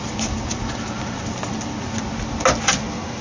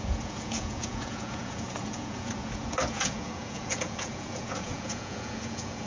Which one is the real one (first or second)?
first